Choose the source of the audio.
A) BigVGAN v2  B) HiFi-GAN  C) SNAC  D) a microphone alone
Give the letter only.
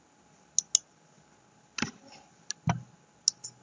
D